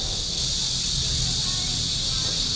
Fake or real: real